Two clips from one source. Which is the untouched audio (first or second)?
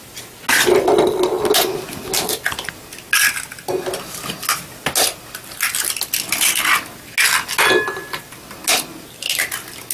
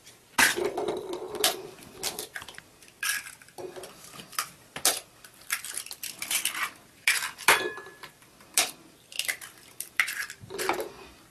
first